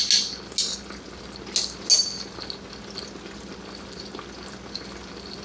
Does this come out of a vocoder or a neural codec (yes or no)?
no